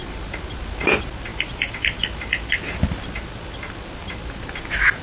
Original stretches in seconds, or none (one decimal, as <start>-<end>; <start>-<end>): 0.0-5.0